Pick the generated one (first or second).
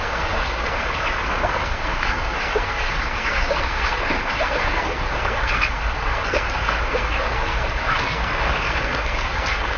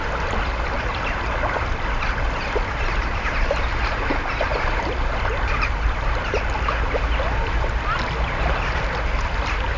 first